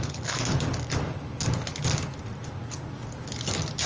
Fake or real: real